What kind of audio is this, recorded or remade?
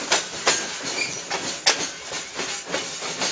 recorded